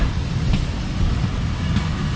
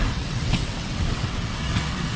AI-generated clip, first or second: second